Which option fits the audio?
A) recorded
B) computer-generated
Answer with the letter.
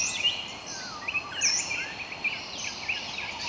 A